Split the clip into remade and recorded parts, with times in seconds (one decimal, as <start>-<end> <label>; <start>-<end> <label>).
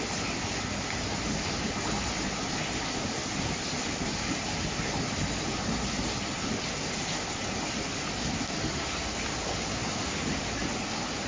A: 0.0-11.3 recorded